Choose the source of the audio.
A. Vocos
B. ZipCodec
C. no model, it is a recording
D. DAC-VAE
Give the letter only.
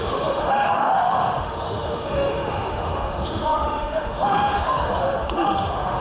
D